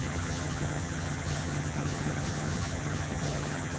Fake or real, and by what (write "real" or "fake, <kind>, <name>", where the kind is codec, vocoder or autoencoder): fake, vocoder, HiFi-GAN